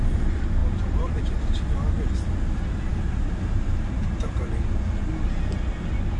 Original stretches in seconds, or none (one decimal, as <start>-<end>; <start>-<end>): 0.0-0.6; 1.2-6.2